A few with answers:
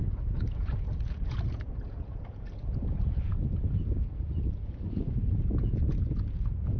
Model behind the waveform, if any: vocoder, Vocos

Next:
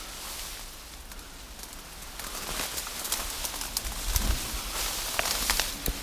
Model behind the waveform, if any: none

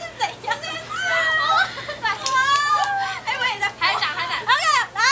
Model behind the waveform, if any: none